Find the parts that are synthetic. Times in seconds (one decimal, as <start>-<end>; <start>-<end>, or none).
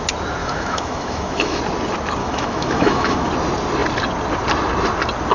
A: 0.4-1.6; 2.2-3.3